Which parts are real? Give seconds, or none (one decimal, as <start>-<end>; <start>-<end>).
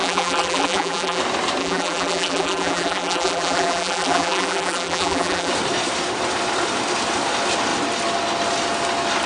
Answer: 1.2-1.6; 5.5-9.3